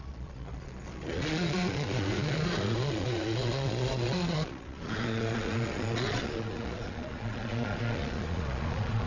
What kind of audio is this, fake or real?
fake